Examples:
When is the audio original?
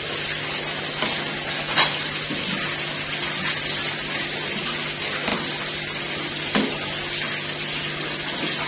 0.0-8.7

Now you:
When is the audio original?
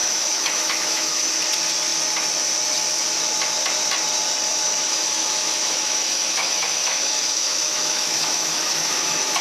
1.4-4.5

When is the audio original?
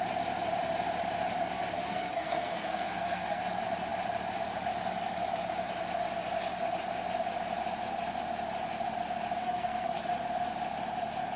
0.0-1.8; 3.4-9.4; 10.0-11.4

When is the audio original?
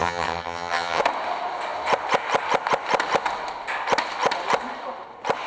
1.0-5.5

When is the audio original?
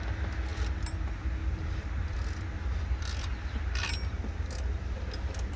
0.0-5.6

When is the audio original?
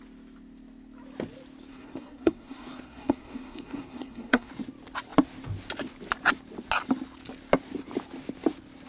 0.0-1.7; 4.5-8.9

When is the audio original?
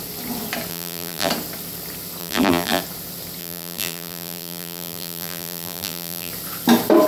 0.0-0.7; 1.3-2.2; 2.8-3.4; 6.3-7.1